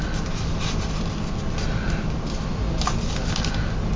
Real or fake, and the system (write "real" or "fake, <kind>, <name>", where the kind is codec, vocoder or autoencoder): real